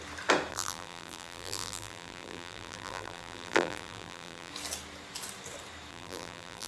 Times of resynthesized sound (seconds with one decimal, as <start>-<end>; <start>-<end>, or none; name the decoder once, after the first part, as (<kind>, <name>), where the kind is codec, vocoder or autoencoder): 0.5-4.5 (vocoder, BigVGAN v2); 5.9-6.7